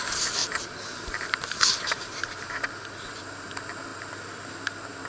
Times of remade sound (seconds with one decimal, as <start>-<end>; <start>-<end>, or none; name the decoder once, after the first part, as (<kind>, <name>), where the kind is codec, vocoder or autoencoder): 0.4-3.5 (vocoder, BigVGAN v2)